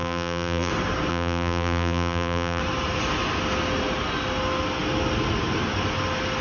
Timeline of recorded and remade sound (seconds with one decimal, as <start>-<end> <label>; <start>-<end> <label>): 0.0-0.7 remade; 0.7-1.1 recorded; 1.1-2.6 remade; 2.6-6.4 recorded